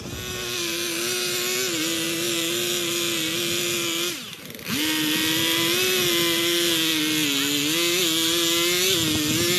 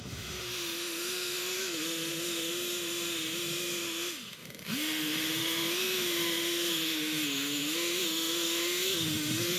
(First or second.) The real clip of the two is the first